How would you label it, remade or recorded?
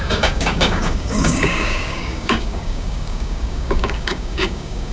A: remade